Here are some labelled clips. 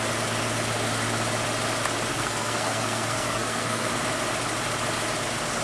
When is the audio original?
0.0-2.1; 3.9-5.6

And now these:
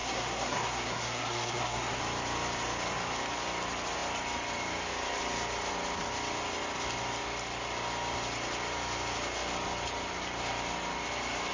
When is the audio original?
2.0-11.5

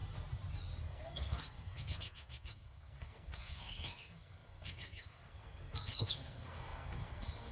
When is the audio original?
0.0-0.8

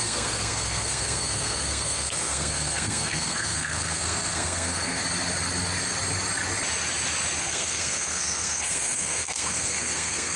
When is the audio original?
5.0-7.4